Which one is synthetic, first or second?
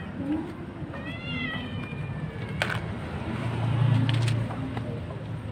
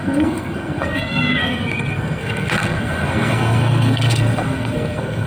second